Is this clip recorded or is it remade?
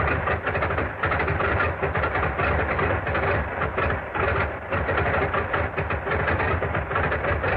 recorded